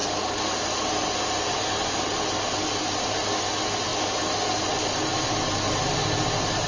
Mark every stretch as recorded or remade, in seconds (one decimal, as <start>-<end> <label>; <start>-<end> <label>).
0.0-6.7 recorded